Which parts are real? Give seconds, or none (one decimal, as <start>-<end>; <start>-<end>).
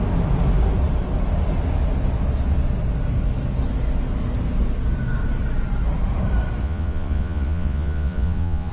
0.0-6.6